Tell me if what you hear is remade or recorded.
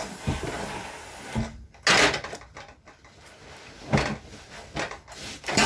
recorded